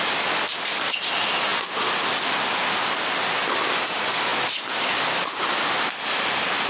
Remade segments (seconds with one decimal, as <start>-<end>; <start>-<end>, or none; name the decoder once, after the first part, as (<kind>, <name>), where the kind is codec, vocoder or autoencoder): none